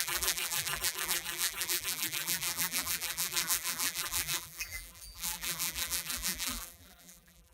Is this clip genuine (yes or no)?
no